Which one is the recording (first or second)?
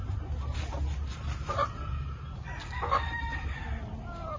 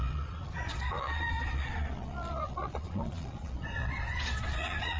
first